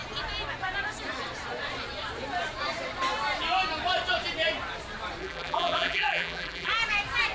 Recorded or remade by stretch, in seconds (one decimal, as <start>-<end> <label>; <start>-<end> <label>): 0.0-5.2 recorded; 5.2-6.7 remade; 6.7-7.3 recorded